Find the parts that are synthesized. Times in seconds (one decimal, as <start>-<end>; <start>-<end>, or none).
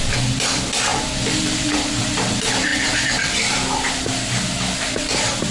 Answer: 0.9-2.0; 2.7-4.1